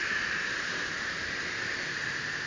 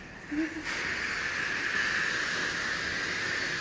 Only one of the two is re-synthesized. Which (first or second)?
first